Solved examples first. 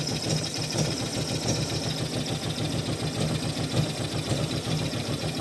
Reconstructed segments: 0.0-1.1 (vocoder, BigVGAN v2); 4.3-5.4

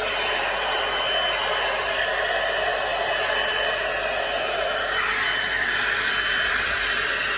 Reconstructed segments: none

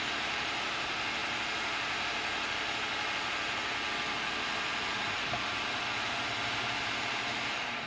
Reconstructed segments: 0.0-1.2 (vocoder, BigVGAN v2); 5.0-7.9

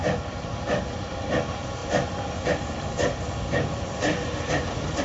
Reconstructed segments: none

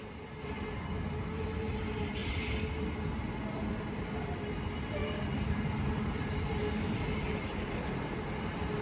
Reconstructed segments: 5.0-8.1 (vocoder, BigVGAN v2)

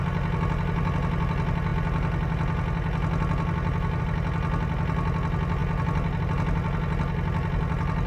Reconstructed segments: none

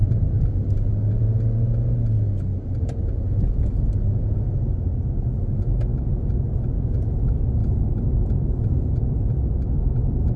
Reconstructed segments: 2.5-4.1 (vocoder, BigVGAN v2); 7.6-10.4

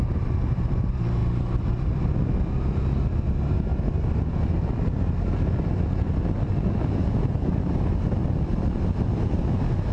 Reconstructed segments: 1.2-2.5 (vocoder, BigVGAN v2)